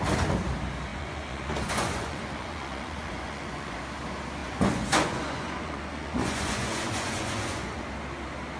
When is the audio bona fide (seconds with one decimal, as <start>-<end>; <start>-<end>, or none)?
0.0-0.9; 3.8-4.4; 7.8-8.6